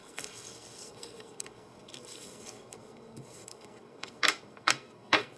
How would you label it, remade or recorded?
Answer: remade